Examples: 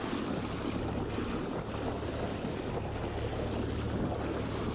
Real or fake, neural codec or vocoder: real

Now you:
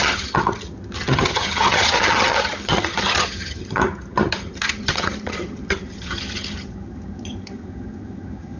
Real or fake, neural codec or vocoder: fake, vocoder, HiFi-GAN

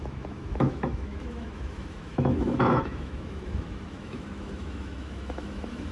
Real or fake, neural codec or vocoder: fake, autoencoder, DAC-VAE